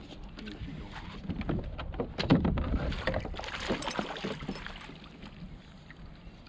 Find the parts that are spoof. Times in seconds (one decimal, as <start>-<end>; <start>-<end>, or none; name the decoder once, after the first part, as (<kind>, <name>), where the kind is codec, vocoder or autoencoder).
none